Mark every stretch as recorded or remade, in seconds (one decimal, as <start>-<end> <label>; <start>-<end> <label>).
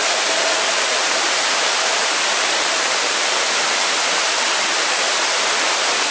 0.0-3.7 remade; 3.7-6.1 recorded